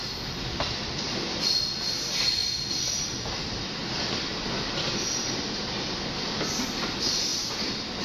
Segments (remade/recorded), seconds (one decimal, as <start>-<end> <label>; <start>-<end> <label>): 0.0-2.4 recorded; 2.4-3.0 remade; 3.0-8.0 recorded